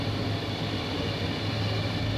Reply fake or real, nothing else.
real